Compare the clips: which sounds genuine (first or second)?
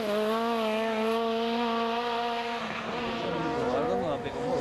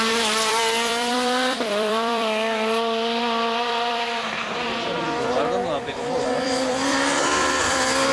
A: first